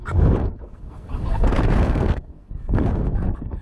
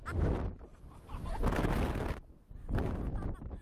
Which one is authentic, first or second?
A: second